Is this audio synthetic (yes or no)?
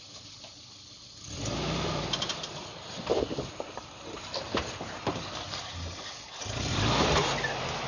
no